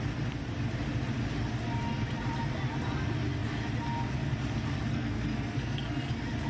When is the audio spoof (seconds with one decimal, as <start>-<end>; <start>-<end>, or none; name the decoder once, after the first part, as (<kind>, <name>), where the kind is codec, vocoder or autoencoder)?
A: 4.9-6.1 (codec, SNAC)